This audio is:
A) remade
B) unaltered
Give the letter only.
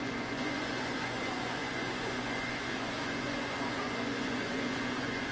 A